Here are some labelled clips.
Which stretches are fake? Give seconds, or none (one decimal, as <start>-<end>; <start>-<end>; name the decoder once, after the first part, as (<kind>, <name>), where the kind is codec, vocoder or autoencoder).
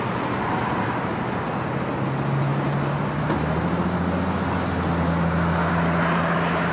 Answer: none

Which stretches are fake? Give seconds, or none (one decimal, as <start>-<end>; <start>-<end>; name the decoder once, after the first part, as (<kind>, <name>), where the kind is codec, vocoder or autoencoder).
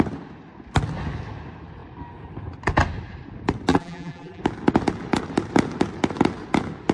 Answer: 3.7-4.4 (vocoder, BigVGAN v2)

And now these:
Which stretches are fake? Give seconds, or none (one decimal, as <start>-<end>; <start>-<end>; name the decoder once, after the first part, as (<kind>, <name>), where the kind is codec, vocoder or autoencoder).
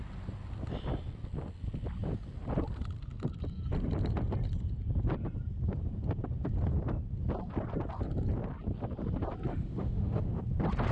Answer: 9.5-10.4 (autoencoder, DAC-VAE)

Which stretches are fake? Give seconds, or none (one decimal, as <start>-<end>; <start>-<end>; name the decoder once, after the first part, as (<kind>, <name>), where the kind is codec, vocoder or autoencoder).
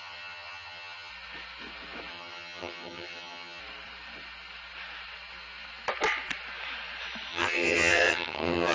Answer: 0.0-1.1 (vocoder, HiFi-GAN); 2.1-3.6; 7.3-8.7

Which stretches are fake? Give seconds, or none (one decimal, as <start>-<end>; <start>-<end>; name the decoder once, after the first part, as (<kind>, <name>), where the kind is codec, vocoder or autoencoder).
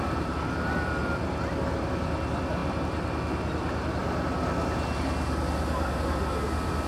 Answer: 0.0-1.0 (vocoder, BigVGAN v2); 1.7-2.6; 5.9-6.9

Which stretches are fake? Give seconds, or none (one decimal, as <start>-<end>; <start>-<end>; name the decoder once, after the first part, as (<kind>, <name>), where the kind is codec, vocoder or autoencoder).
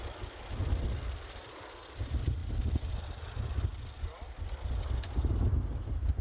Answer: 2.4-3.2 (vocoder, BigVGAN v2)